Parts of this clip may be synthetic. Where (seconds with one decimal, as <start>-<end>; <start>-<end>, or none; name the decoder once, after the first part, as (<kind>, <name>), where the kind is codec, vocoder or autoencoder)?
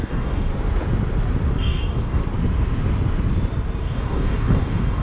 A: 0.0-0.5 (codec, DAC); 1.6-2.2; 3.8-5.0